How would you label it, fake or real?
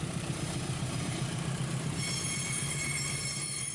fake